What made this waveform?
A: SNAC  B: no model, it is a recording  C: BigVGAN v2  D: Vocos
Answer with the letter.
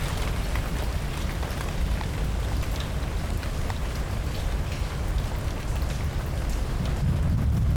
B